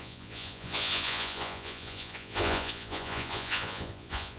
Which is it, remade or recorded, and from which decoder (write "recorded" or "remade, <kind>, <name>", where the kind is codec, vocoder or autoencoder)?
remade, vocoder, Vocos